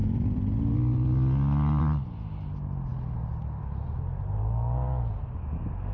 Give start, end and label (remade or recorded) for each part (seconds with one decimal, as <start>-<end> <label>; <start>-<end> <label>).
0.0-5.9 recorded